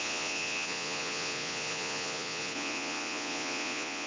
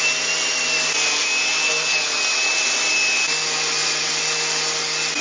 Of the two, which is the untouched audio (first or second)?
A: second